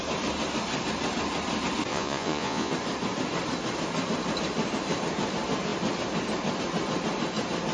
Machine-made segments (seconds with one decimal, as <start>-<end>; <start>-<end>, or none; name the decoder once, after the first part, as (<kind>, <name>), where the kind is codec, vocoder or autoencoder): 1.9-2.7 (vocoder, Vocos)